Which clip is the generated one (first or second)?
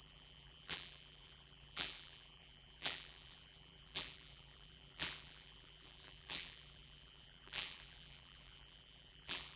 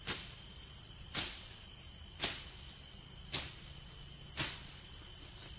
first